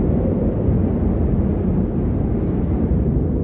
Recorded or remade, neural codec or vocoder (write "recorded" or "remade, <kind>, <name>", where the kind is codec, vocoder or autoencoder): recorded